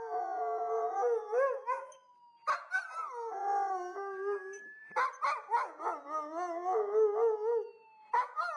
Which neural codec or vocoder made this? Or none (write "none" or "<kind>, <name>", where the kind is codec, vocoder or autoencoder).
none